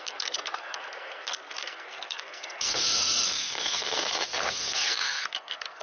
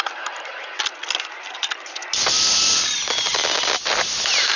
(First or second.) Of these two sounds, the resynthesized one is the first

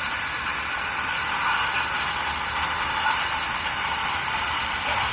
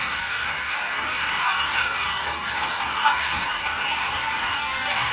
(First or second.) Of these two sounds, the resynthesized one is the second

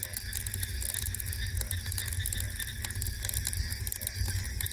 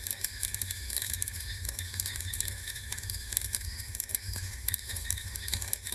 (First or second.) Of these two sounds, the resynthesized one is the second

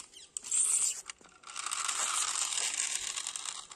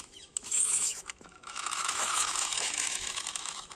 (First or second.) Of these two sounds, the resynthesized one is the second